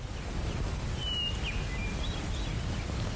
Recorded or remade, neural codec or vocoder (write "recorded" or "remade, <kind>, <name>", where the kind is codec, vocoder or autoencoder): recorded